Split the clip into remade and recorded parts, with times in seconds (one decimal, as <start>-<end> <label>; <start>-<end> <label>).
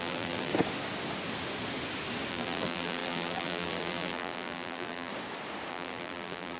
0.0-0.5 remade; 0.5-2.3 recorded; 2.3-5.1 remade; 5.1-5.7 recorded; 5.7-6.6 remade